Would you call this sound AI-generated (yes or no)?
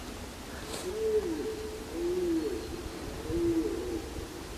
no